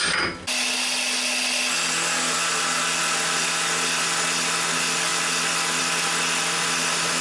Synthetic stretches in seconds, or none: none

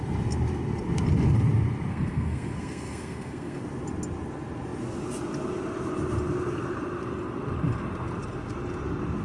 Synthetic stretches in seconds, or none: 1.9-3.6 (codec, SNAC)

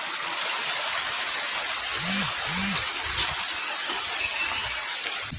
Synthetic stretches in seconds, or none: none

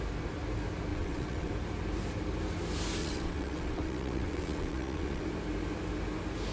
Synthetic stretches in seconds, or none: 0.9-1.5 (vocoder, WaveNeXt); 3.0-5.2

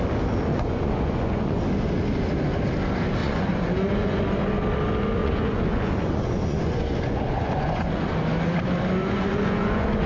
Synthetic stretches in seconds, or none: 0.5-1.6 (vocoder, Vocos); 3.2-4.2; 5.2-8.1; 9.0-10.1